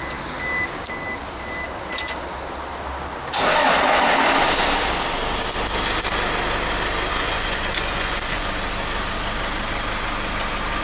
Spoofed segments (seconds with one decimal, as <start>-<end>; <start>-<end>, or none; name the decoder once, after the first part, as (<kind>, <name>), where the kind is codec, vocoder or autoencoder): 7.1-8.5 (vocoder, Vocos)